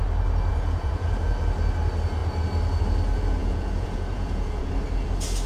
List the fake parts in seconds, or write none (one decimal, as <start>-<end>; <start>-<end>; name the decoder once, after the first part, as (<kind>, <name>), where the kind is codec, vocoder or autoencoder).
0.5-1.1 (vocoder, Vocos); 3.4-4.7